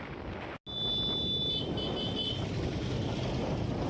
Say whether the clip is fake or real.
real